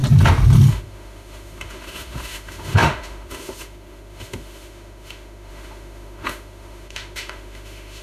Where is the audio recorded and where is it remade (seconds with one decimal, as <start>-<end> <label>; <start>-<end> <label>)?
0.0-0.7 recorded; 0.7-8.0 remade